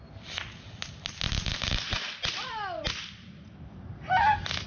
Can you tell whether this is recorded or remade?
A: recorded